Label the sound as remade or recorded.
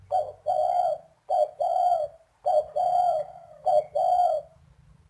recorded